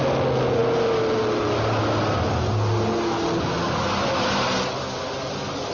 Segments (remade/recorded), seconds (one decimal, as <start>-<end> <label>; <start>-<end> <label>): 0.0-5.7 recorded